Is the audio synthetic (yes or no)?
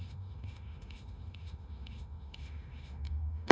yes